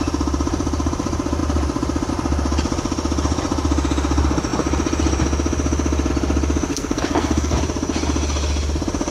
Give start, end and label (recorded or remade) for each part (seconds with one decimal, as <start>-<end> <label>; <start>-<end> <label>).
0.0-6.7 recorded; 6.7-7.6 remade; 7.6-9.1 recorded